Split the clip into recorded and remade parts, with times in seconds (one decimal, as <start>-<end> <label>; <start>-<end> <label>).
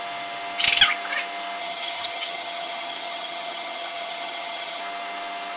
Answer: 0.0-1.6 recorded; 1.6-4.8 remade; 4.8-5.6 recorded